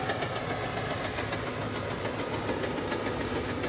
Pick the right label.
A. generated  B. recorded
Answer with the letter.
B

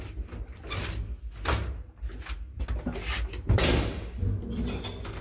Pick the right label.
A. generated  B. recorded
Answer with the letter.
B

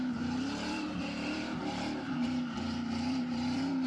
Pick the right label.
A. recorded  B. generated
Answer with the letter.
B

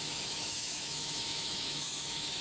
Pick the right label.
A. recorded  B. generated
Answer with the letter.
B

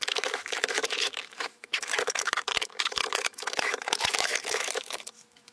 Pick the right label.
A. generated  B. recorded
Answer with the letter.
A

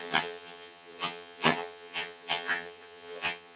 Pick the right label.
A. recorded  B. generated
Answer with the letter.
B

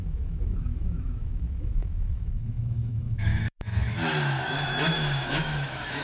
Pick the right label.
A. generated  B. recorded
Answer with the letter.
A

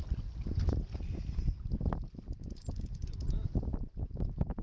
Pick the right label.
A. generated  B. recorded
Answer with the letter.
B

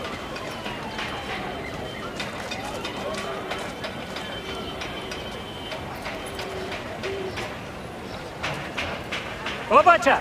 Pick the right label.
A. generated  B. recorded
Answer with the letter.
A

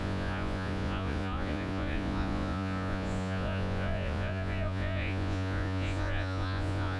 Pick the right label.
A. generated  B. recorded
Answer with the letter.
A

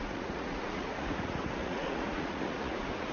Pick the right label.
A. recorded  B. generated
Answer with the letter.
B